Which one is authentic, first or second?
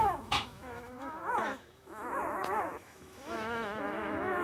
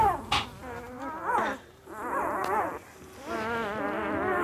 second